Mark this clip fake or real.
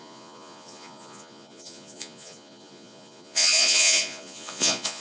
fake